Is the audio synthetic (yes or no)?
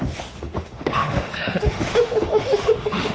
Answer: yes